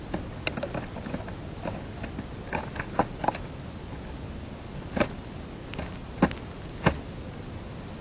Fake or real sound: real